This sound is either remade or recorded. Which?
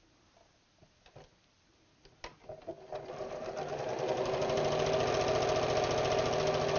recorded